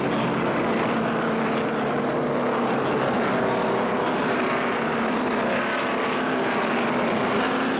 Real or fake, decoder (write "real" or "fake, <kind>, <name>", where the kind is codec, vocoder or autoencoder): real